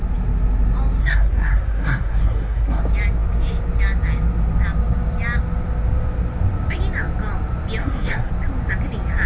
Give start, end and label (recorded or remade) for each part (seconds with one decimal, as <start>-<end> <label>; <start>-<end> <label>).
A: 0.0-1.0 recorded; 1.0-2.8 remade; 2.8-7.8 recorded; 7.8-8.3 remade; 8.3-9.3 recorded

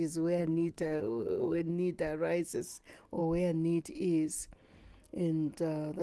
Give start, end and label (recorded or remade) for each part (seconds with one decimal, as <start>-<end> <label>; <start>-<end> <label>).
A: 0.0-0.4 recorded; 0.4-1.7 remade; 1.7-6.0 recorded

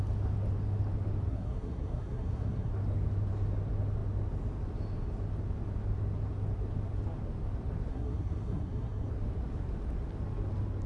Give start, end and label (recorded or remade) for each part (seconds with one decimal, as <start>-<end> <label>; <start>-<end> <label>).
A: 0.0-1.3 recorded; 1.3-2.7 remade; 2.7-7.9 recorded; 7.9-9.1 remade; 9.1-10.9 recorded